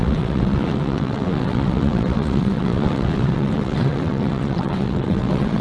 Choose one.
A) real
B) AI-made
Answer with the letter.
B